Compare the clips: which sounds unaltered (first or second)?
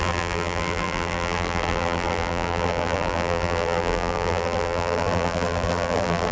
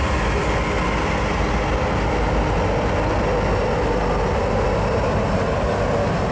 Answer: second